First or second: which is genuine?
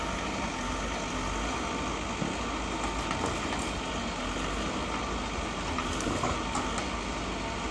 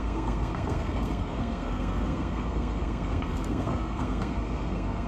first